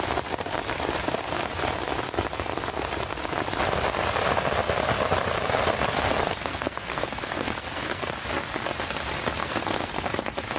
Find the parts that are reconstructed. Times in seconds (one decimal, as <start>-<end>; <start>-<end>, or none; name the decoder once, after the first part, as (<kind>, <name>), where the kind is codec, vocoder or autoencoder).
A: 6.2-8.1 (codec, SNAC); 9.4-10.1

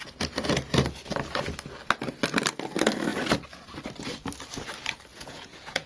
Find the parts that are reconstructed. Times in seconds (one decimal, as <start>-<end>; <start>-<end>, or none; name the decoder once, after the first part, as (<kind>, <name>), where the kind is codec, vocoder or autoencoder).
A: 5.1-5.9 (vocoder, Vocos)

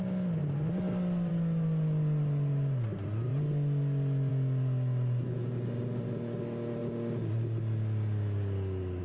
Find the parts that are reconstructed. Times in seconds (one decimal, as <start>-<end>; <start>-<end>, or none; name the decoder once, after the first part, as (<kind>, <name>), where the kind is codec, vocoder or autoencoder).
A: none

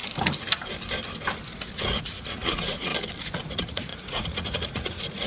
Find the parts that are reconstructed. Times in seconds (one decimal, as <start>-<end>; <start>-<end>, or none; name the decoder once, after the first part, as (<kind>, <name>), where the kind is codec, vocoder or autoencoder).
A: 2.0-2.9 (vocoder, Vocos); 3.5-5.3

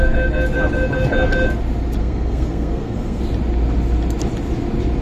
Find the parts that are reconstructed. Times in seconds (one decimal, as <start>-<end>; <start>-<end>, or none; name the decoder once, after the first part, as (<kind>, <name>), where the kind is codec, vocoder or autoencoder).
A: 2.0-3.2 (codec, SNAC)

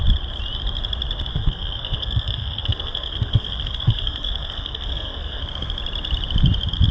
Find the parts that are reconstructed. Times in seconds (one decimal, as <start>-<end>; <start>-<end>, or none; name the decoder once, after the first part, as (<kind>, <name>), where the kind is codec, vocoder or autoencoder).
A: 1.3-5.4 (codec, SNAC)